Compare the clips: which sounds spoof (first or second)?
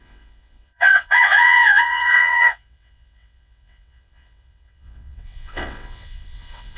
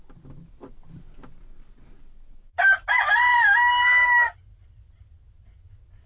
first